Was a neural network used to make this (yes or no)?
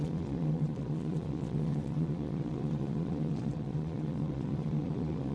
yes